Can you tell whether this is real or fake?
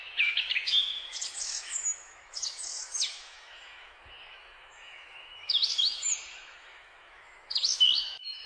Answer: fake